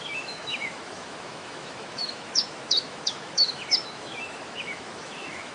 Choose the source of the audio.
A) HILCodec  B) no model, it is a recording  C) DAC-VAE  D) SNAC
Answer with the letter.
C